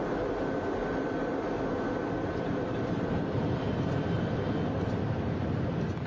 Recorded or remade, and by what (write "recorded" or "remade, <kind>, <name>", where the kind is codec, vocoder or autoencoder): recorded